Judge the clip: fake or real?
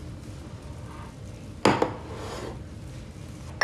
real